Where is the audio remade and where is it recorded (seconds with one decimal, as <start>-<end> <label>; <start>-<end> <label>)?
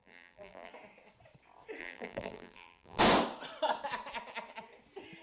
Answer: 0.0-0.7 remade; 0.7-1.8 recorded; 1.8-3.0 remade; 3.0-5.2 recorded